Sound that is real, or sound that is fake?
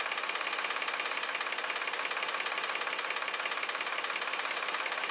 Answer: real